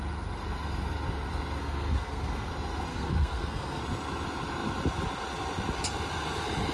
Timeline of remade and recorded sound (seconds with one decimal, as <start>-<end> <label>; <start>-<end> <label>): 0.0-1.6 recorded; 1.6-2.5 remade; 2.5-2.9 recorded; 2.9-3.8 remade; 3.8-6.7 recorded